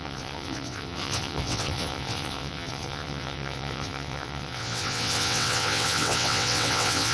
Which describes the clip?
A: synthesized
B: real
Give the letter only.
A